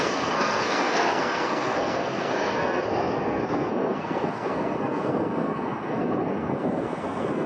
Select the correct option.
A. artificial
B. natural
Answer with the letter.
A